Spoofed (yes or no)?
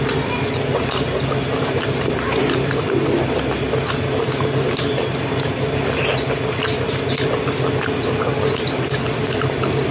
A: no